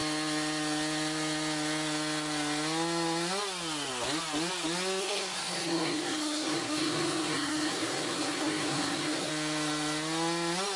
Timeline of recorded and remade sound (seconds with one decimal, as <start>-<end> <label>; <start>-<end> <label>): 0.0-5.0 recorded; 5.0-9.3 remade; 9.3-10.8 recorded